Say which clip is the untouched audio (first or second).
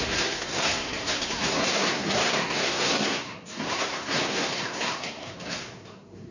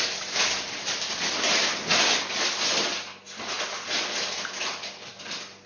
second